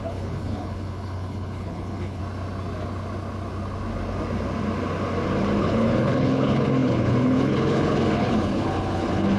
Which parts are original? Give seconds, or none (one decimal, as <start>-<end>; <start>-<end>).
2.2-5.6